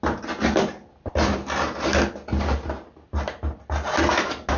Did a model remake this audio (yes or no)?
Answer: no